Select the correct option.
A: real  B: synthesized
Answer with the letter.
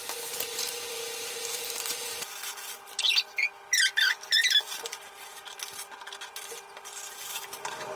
A